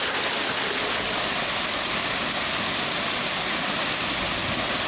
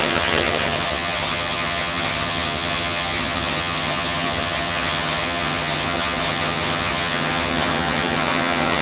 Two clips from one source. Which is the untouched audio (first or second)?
first